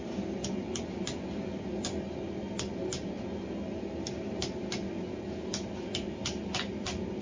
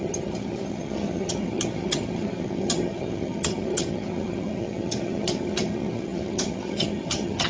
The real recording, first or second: first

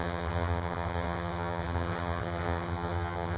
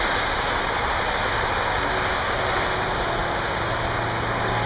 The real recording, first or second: second